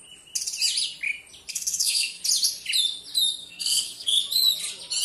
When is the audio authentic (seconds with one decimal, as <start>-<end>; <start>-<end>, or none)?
0.0-1.5; 2.2-3.4; 4.2-5.0